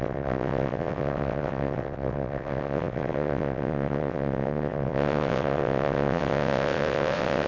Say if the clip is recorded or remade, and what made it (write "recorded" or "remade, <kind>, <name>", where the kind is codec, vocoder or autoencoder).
remade, vocoder, WaveNeXt